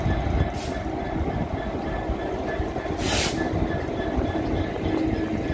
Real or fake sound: real